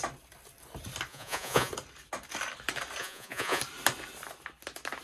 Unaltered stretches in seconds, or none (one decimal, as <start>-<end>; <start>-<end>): 0.0-1.1; 1.7-3.0; 3.6-5.0